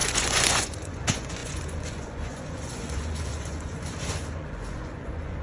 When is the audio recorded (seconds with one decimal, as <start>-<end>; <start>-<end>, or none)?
none